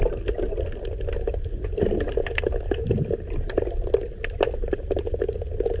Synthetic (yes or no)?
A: no